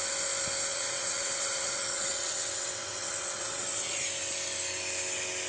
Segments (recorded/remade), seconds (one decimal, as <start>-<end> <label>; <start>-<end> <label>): 0.0-0.7 recorded; 0.7-4.0 remade; 4.0-5.5 recorded